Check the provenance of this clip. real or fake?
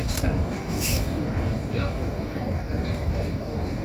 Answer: fake